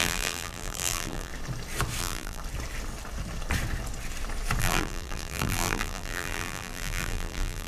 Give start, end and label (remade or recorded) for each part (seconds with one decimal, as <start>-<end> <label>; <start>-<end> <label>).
0.0-1.3 remade; 1.3-2.0 recorded; 2.0-2.4 remade; 2.4-4.6 recorded; 4.6-7.7 remade